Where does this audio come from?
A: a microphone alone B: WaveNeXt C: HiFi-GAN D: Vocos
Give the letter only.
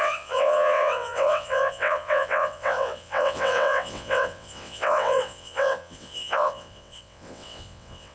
B